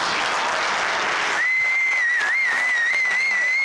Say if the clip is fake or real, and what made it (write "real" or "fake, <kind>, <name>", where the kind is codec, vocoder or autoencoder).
real